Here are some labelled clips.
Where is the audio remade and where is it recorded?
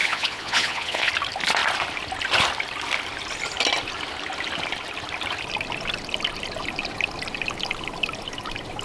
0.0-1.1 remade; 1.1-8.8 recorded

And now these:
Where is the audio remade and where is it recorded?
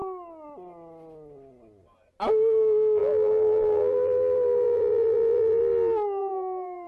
0.0-2.3 recorded; 2.3-5.6 remade; 5.6-6.2 recorded; 6.2-6.9 remade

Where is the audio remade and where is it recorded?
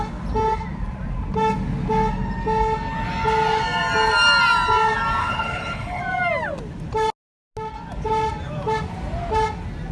0.0-5.2 recorded; 5.2-6.0 remade; 6.0-9.9 recorded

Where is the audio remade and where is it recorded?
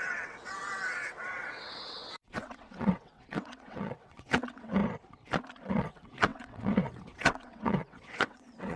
0.0-4.8 remade; 4.8-5.6 recorded; 5.6-8.8 remade